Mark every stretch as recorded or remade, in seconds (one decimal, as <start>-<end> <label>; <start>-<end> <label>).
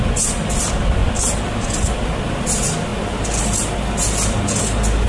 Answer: 0.0-5.1 recorded